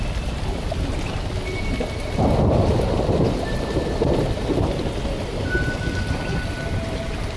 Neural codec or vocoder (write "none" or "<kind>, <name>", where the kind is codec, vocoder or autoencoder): none